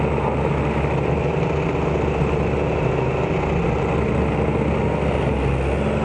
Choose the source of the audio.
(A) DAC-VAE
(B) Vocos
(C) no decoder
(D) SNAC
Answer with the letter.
C